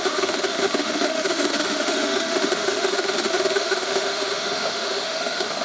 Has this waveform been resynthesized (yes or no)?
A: yes